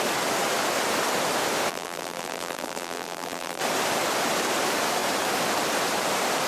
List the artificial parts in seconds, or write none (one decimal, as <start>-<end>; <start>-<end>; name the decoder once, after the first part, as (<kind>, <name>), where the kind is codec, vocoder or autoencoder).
1.7-3.6 (vocoder, BigVGAN v2)